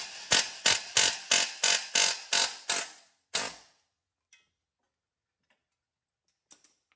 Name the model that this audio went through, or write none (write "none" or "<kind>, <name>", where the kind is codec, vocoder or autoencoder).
none